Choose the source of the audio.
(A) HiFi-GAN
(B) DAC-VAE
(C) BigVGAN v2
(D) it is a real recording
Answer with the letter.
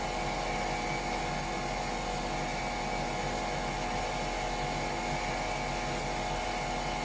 D